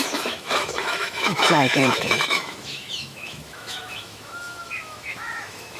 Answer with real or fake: fake